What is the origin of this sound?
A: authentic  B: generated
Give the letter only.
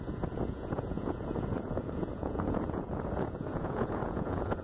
B